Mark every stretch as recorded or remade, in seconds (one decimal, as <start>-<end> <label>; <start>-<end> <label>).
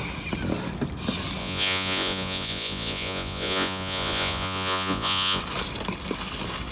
0.0-1.4 recorded; 1.4-5.4 remade; 5.4-6.7 recorded